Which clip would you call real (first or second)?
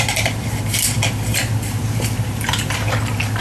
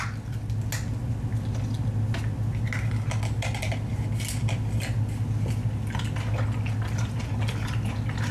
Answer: second